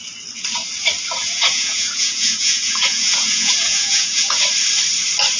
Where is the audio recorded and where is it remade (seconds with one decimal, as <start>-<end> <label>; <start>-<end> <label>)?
0.0-1.2 recorded; 1.2-4.4 remade; 4.4-5.4 recorded